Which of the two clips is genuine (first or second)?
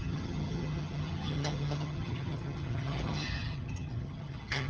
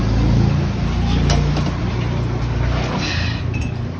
second